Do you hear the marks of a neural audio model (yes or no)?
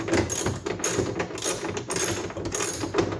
no